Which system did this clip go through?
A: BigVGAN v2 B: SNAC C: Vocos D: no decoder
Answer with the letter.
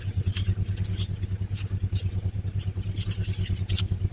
D